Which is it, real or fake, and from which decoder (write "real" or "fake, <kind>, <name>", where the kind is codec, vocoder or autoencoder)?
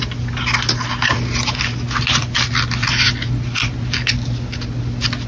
real